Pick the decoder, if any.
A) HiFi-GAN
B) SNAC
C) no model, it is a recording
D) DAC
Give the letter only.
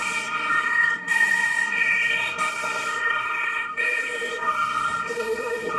B